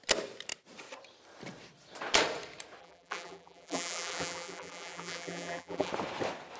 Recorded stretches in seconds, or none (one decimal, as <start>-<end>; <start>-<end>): 0.0-2.8; 5.9-6.6